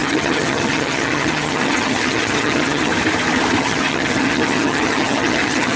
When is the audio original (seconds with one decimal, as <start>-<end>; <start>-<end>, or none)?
2.9-3.6